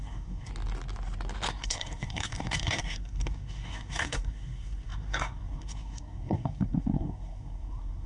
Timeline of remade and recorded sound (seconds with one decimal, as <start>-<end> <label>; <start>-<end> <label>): 0.0-0.5 remade; 0.5-1.5 recorded; 1.5-8.1 remade